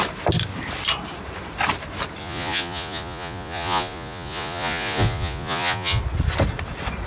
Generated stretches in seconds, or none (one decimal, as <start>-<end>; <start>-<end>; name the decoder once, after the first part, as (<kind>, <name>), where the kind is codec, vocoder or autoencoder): 2.2-6.0 (vocoder, Vocos)